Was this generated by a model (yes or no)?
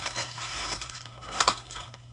yes